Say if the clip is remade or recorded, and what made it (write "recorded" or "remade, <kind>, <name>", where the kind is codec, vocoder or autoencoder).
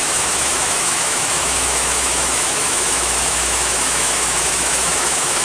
remade, autoencoder, DAC-VAE